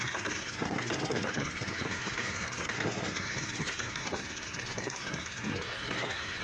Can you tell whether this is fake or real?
fake